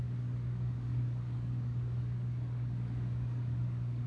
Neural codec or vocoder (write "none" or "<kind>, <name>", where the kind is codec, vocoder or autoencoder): codec, DAC